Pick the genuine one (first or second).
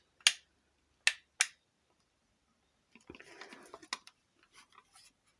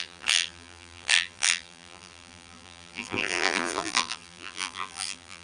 first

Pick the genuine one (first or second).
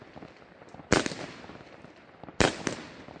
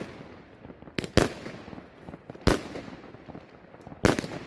second